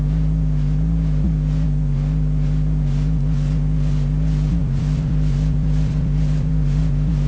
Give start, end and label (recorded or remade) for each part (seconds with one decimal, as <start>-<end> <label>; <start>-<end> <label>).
0.0-4.6 recorded; 4.6-6.8 remade; 6.8-7.3 recorded